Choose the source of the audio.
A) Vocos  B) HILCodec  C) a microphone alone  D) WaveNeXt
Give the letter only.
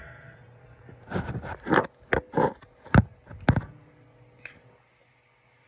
C